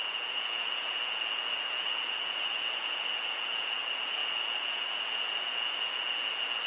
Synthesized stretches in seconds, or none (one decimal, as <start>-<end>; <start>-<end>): 0.0-6.7